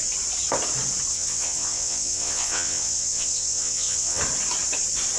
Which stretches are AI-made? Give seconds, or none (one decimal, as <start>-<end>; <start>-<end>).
1.1-4.2